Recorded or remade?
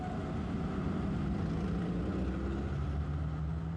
recorded